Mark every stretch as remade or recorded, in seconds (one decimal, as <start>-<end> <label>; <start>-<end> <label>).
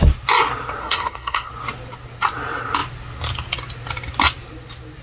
0.0-0.8 recorded; 0.8-1.5 remade; 1.5-5.0 recorded